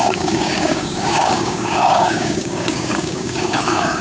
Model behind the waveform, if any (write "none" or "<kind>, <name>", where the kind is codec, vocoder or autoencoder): codec, DAC